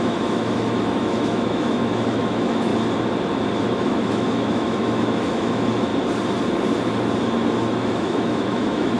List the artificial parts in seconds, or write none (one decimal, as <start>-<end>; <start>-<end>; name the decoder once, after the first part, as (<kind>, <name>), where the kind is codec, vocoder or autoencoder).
0.0-2.7 (autoencoder, DAC-VAE); 3.6-5.9; 7.6-9.0